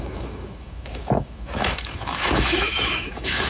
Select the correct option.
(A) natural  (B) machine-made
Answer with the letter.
B